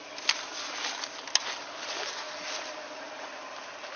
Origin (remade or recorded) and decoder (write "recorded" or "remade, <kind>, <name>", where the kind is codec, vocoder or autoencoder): recorded